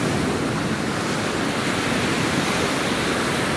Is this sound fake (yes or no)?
no